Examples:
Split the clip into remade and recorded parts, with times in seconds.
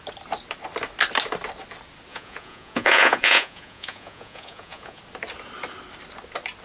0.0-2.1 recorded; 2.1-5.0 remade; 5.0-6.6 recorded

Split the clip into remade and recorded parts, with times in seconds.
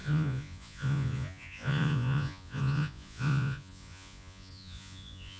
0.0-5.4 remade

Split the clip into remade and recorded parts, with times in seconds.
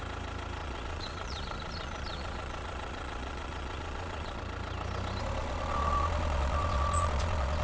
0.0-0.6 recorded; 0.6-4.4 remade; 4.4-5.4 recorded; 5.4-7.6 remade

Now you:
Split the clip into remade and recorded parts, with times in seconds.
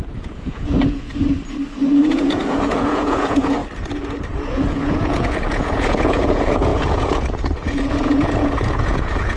0.0-1.1 remade; 1.1-2.0 recorded; 2.0-3.6 remade; 3.6-4.3 recorded; 4.3-9.4 remade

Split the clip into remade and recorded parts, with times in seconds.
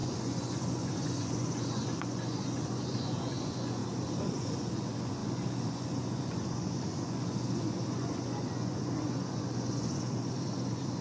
0.0-11.0 remade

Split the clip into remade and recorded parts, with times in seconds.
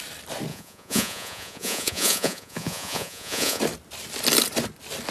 0.0-0.5 recorded; 0.5-3.6 remade; 3.6-5.1 recorded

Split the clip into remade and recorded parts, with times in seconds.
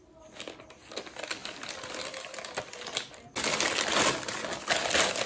0.0-5.3 recorded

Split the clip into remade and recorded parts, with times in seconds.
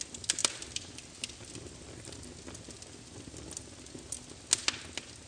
0.0-5.3 recorded